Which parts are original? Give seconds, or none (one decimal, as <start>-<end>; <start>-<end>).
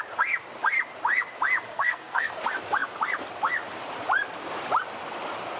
0.0-1.7; 2.3-5.6